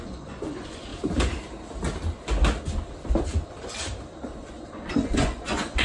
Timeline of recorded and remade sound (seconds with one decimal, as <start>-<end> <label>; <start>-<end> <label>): 0.0-0.9 remade; 0.9-4.4 recorded; 4.4-5.8 remade